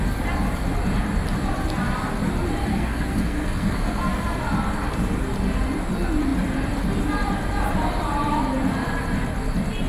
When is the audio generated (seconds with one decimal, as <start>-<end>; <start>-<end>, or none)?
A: 2.7-4.0